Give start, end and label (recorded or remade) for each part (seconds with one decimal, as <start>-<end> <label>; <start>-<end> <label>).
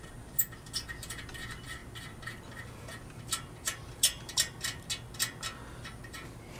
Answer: 0.0-6.6 recorded